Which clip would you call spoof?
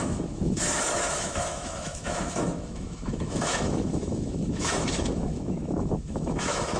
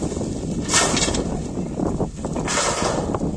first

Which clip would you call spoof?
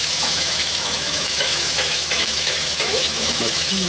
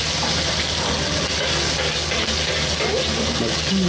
first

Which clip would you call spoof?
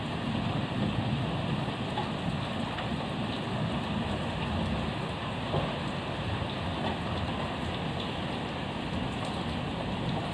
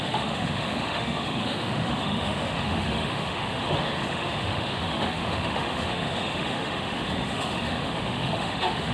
second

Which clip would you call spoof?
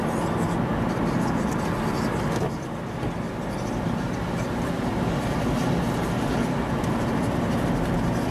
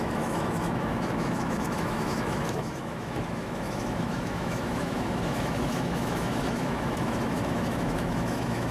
second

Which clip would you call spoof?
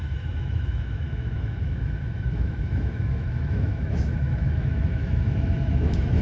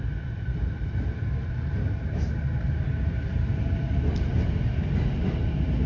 first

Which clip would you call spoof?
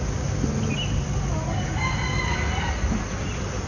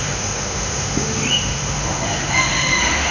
second